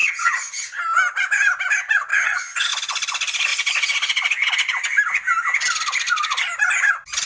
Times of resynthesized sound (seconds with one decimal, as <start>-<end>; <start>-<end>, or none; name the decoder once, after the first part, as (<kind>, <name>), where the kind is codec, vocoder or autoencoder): 0.0-0.8 (vocoder, HiFi-GAN); 2.1-2.7